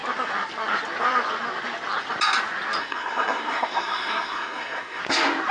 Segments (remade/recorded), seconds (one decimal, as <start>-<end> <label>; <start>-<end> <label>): 0.0-2.8 recorded; 2.8-5.0 remade; 5.0-5.5 recorded